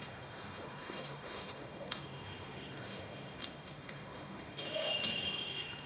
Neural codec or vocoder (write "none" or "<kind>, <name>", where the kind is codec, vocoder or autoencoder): autoencoder, DAC-VAE